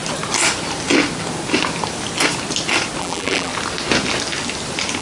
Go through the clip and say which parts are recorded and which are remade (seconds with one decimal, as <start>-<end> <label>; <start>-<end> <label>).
0.0-3.0 recorded; 3.0-3.5 remade; 3.5-5.0 recorded